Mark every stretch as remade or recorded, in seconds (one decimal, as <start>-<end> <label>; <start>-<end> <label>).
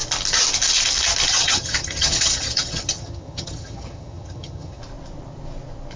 0.0-1.3 recorded; 1.3-4.8 remade; 4.8-6.0 recorded